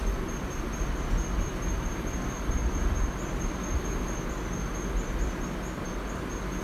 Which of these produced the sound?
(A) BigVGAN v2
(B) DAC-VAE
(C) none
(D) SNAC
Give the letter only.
C